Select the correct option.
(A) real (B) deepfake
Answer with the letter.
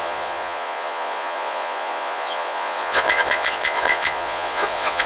B